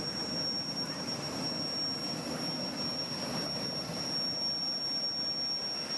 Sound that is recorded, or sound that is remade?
recorded